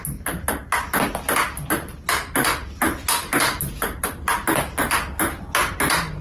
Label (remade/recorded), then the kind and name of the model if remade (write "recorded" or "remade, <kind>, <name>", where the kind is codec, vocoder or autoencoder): recorded